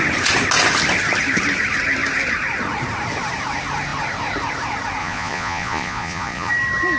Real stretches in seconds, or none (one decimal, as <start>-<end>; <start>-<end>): 0.0-5.0; 6.5-7.0